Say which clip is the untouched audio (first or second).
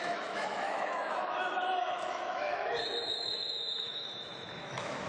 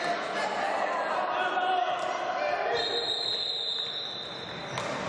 second